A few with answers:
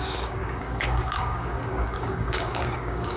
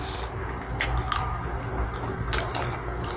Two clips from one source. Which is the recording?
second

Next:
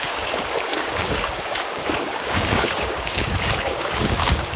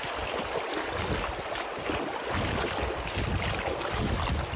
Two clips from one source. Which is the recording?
second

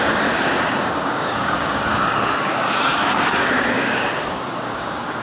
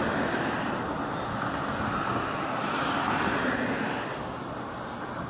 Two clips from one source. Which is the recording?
second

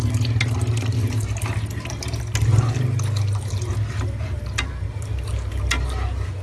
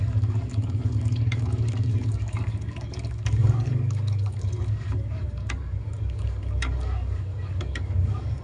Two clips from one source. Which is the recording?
first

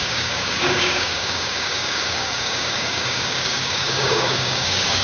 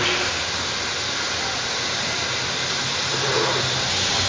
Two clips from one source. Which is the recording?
second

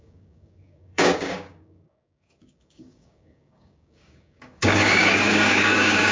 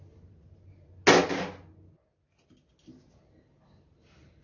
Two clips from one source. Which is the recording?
second